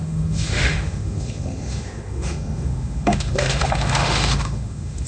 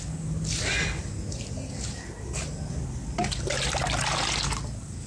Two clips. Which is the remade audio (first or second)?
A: first